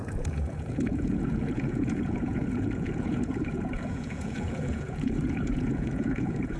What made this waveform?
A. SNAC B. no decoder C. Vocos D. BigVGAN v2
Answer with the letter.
C